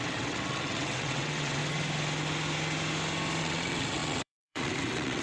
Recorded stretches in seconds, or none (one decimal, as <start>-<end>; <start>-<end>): 1.6-3.4

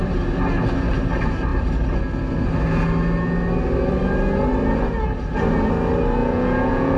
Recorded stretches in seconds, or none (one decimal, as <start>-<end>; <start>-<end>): 0.0-6.2

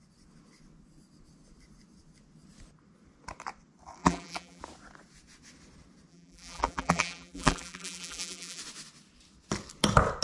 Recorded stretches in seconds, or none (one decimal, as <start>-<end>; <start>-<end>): 0.0-4.0; 4.6-6.1; 8.6-10.2

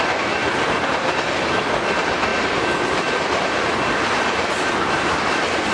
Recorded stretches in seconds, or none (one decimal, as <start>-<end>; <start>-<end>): 0.0-0.4; 1.6-2.3; 4.7-5.7